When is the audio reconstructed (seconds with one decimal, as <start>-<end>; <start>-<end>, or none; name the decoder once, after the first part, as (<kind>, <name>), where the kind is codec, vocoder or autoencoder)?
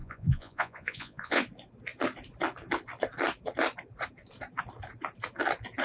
0.0-1.4 (vocoder, Vocos)